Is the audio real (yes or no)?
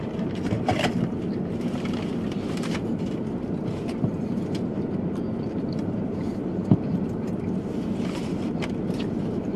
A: no